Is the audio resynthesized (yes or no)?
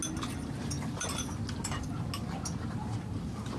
no